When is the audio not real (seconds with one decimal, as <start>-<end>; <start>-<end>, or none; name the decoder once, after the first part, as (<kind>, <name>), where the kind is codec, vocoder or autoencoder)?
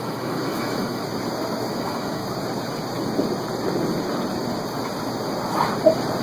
0.0-1.0 (autoencoder, DAC-VAE); 1.7-2.2